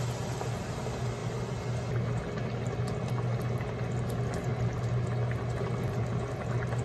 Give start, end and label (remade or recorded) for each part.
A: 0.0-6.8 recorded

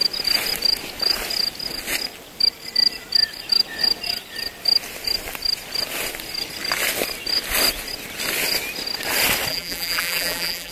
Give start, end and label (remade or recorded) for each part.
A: 0.0-9.5 recorded; 9.5-10.7 remade

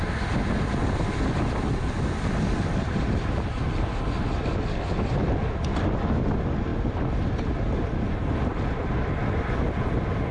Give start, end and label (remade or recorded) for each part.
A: 0.0-1.8 recorded; 1.8-3.8 remade; 3.8-8.5 recorded; 8.5-9.6 remade; 9.6-10.3 recorded

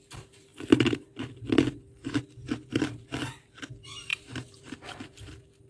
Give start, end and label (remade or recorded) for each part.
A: 0.0-0.5 remade; 0.5-2.7 recorded; 2.7-5.7 remade

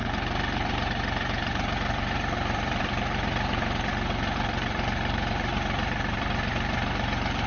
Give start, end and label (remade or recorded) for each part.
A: 0.0-7.5 remade

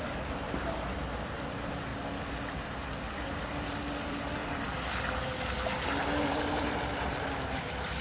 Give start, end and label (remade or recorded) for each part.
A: 0.0-1.9 remade; 1.9-3.4 recorded; 3.4-4.4 remade; 4.4-6.1 recorded; 6.1-8.0 remade

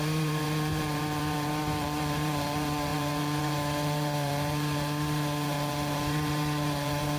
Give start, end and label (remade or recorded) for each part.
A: 0.0-7.2 remade